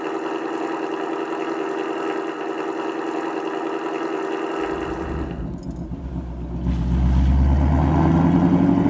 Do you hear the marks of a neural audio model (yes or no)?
no